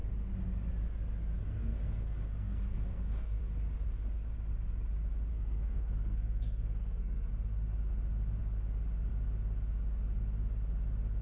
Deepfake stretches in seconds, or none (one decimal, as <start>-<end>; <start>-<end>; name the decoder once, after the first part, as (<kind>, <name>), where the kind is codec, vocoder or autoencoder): 1.4-3.4 (codec, SNAC); 5.3-7.3